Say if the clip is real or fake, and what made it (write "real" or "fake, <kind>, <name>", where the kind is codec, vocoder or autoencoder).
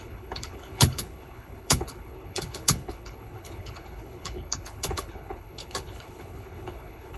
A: fake, codec, HILCodec